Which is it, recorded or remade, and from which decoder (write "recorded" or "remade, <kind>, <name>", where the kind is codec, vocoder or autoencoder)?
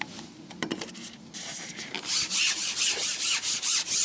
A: remade, vocoder, BigVGAN v2